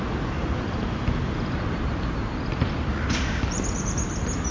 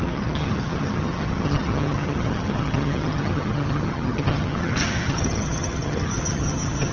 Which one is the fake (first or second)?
second